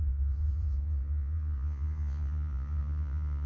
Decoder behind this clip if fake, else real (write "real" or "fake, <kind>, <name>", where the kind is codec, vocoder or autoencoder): fake, vocoder, Vocos